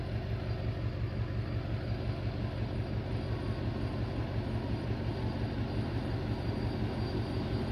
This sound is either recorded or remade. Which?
recorded